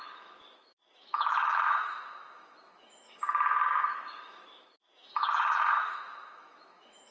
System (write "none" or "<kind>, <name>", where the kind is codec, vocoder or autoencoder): autoencoder, DAC-VAE